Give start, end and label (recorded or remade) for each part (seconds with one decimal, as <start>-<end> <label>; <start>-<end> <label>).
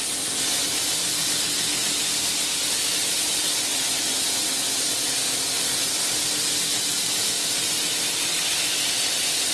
0.0-9.5 recorded